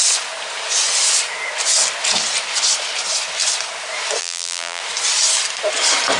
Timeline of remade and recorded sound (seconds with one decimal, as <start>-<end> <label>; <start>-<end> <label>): 0.0-4.2 recorded; 4.2-4.8 remade; 4.8-6.2 recorded